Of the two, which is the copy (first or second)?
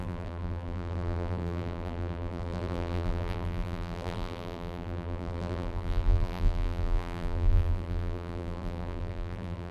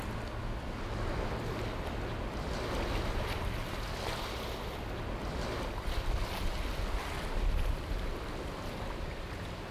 first